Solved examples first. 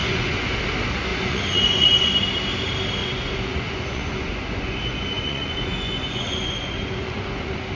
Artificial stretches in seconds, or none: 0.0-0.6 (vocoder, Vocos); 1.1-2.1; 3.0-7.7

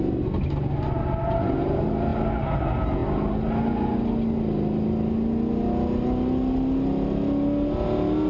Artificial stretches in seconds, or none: none

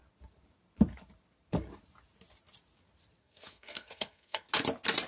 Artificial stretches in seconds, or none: 3.2-4.5 (codec, SNAC)

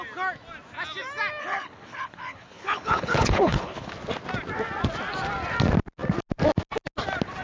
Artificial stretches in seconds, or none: 1.4-3.9 (codec, HILCodec)

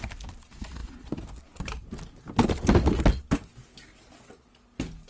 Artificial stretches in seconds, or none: none